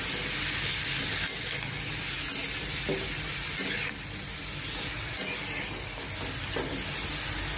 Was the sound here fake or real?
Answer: real